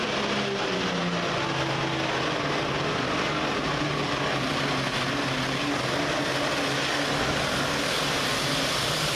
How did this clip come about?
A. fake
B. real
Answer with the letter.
B